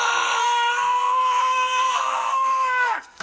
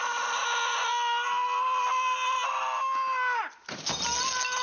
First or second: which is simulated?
first